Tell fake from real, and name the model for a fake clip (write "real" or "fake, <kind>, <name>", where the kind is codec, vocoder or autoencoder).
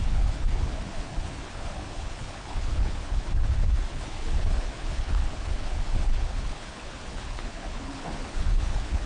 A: fake, codec, HILCodec